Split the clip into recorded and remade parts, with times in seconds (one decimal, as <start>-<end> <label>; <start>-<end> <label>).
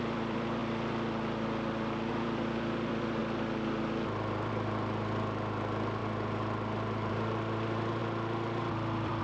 0.0-0.6 remade; 0.6-2.1 recorded; 2.1-3.2 remade; 3.2-4.5 recorded; 4.5-9.2 remade